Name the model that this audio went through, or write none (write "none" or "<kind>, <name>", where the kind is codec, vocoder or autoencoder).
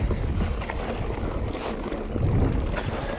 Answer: none